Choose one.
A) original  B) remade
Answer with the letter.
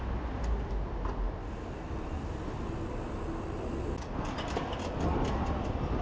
A